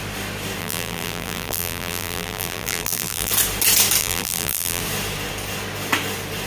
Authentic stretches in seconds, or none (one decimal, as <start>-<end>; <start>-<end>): 0.0-0.6; 3.3-4.0; 4.8-6.5